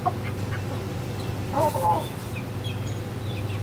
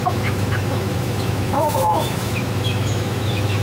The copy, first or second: second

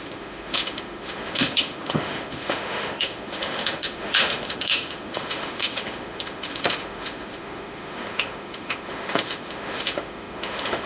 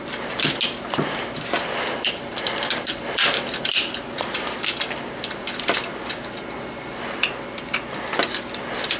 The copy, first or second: first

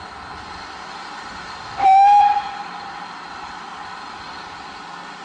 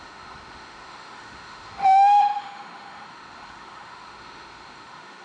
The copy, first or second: second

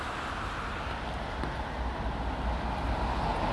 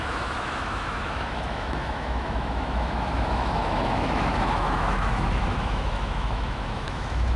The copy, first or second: second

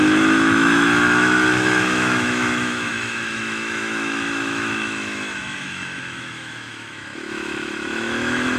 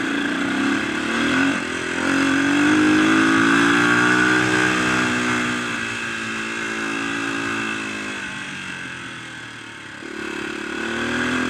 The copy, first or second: first